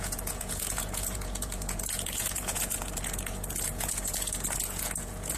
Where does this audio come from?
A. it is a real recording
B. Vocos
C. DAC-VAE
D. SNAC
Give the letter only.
B